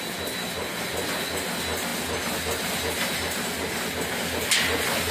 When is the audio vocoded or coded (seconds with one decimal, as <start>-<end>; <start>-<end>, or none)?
none